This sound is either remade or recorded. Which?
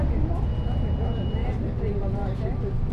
recorded